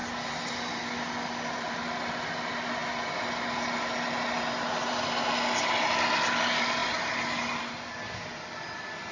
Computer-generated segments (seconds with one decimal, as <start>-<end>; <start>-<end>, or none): none